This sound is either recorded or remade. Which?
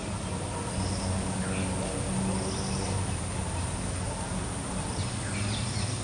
recorded